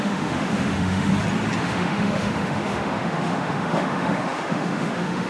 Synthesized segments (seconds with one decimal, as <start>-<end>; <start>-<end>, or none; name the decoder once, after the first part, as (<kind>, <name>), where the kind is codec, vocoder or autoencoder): 0.0-1.1 (autoencoder, DAC-VAE); 1.6-5.3